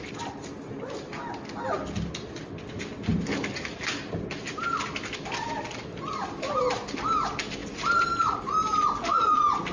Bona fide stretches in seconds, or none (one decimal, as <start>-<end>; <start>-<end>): 0.0-3.1; 5.5-6.2; 6.7-7.6; 8.4-9.7